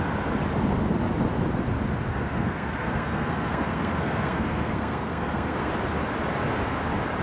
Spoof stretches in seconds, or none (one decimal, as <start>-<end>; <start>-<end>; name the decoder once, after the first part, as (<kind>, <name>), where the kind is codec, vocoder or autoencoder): 2.1-5.7 (codec, SNAC)